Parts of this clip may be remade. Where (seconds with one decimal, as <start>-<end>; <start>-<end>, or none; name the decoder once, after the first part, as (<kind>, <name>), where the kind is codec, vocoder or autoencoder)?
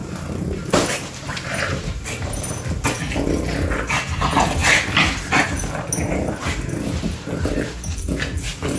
0.0-2.6 (vocoder, BigVGAN v2)